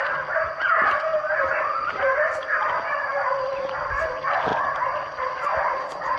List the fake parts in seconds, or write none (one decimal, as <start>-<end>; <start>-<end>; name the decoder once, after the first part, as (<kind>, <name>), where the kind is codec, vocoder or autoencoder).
none